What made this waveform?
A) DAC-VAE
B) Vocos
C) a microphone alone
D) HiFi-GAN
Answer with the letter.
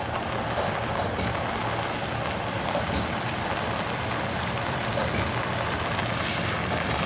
C